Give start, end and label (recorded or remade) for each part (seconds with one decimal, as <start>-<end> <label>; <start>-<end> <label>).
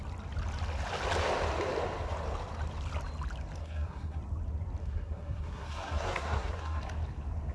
0.0-3.6 recorded; 3.6-4.2 remade; 4.2-4.8 recorded; 4.8-6.8 remade; 6.8-7.5 recorded